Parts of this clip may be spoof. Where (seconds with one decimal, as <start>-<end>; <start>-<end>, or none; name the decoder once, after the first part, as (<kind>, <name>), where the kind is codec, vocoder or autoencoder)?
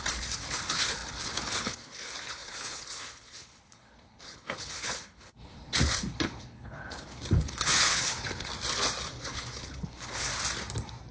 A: 0.0-8.5 (codec, HILCodec); 9.1-10.3